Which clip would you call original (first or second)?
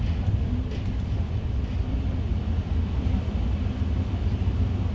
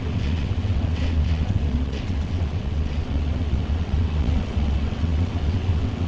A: first